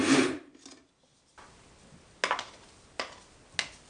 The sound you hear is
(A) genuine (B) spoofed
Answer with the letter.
A